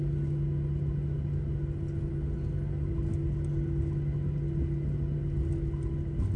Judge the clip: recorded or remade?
recorded